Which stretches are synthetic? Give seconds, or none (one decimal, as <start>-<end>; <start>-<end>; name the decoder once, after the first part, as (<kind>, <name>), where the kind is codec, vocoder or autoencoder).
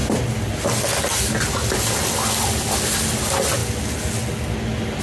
none